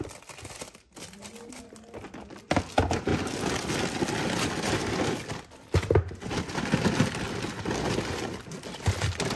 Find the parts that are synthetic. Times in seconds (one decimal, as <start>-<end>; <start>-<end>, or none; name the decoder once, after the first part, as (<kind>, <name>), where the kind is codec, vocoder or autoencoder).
none